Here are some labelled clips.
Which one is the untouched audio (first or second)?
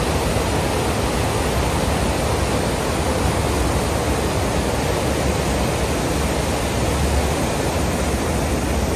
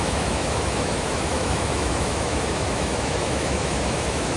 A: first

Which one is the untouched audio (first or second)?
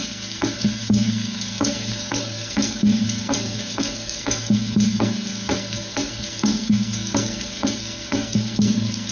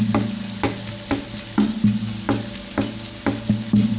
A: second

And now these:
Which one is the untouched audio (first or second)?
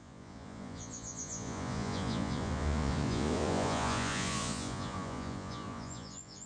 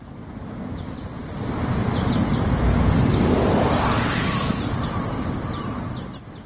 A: second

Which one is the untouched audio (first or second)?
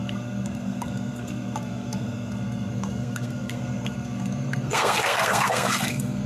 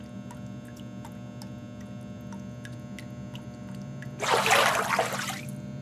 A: second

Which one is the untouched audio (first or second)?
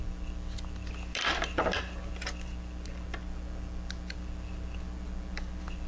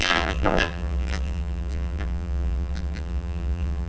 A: first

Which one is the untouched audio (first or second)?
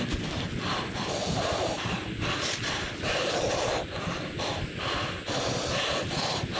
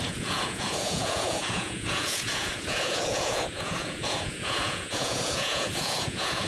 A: first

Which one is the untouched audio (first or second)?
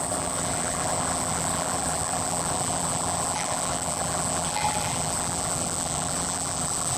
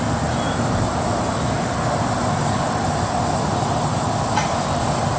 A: second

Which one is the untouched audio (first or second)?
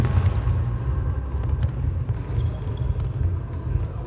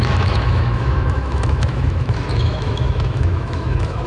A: first